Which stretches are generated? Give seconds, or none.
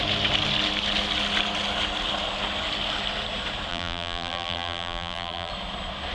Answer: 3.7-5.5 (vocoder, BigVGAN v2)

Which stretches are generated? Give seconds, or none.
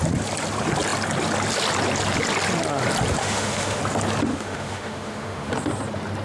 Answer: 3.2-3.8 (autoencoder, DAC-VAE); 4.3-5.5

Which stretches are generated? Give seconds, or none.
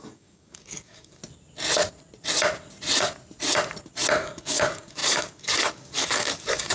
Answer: 0.0-1.2 (codec, DAC); 4.2-6.7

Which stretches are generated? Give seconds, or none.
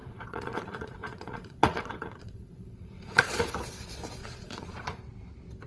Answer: 0.0-3.4 (vocoder, Vocos); 4.2-5.0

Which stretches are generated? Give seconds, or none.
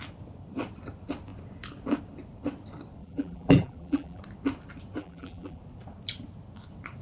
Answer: 3.0-4.2 (vocoder, BigVGAN v2); 5.0-5.6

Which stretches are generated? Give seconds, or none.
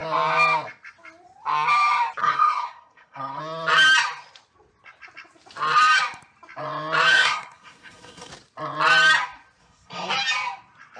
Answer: 2.2-3.4 (codec, SNAC); 7.1-8.3; 9.6-10.1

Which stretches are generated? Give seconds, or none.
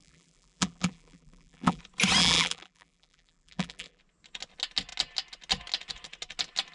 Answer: 0.0-1.8 (vocoder, BigVGAN v2); 2.2-4.0